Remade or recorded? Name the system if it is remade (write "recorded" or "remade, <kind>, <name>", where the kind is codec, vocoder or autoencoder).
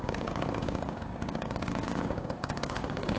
remade, codec, DAC